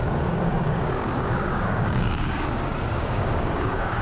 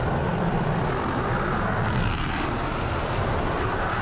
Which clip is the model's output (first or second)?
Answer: first